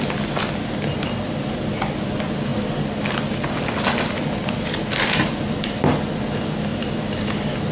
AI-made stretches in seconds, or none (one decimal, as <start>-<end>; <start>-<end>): none